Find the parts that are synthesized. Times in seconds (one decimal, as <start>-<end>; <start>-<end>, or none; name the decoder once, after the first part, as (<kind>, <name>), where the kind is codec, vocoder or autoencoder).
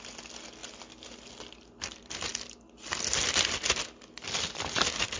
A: none